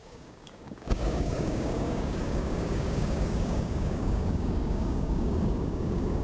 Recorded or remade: remade